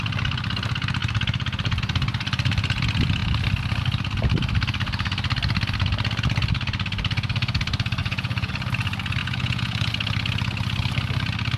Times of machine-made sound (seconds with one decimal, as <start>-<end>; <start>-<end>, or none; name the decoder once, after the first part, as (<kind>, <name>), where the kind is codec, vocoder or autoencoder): 8.0-8.5 (vocoder, Vocos); 9.2-9.9